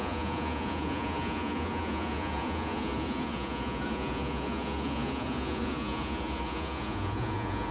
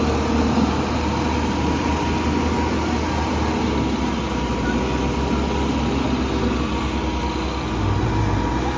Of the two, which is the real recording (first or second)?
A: second